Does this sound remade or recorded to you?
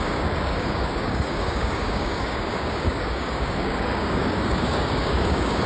remade